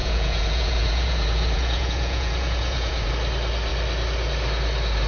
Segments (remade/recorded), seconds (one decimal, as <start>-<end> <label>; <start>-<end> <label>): 0.0-3.1 remade; 3.1-5.1 recorded